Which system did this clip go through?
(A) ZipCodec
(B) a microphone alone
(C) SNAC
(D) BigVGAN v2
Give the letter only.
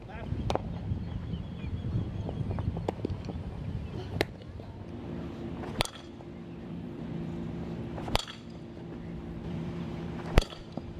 D